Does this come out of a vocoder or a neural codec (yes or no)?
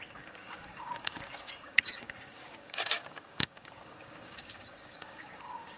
yes